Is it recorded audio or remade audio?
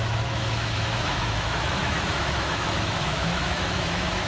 remade